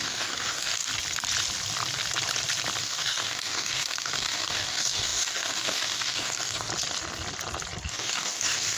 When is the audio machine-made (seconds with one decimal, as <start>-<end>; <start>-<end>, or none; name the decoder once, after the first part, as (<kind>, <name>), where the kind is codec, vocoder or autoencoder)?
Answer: 0.0-0.9 (codec, DAC); 2.8-6.7; 7.9-8.8